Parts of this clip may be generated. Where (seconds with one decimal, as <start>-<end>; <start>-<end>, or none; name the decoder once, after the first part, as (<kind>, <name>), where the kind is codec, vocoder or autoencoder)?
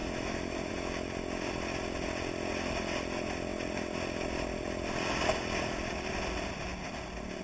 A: 0.0-0.7 (autoencoder, DAC-VAE)